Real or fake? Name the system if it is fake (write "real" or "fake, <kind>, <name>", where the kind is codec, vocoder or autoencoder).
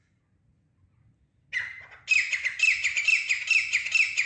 real